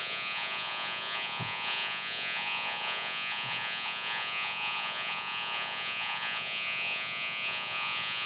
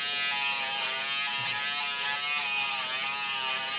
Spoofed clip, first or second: first